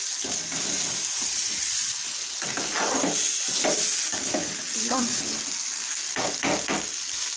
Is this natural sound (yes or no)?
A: yes